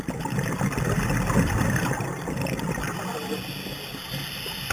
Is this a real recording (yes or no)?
yes